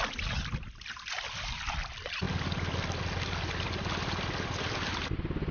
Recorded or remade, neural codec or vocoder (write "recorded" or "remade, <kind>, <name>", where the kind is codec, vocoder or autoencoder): recorded